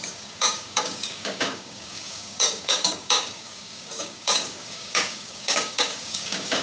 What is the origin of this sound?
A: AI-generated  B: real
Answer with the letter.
A